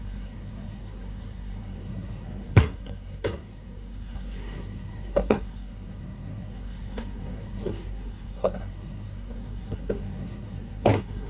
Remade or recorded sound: remade